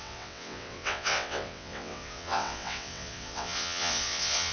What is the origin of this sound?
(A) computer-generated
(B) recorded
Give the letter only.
A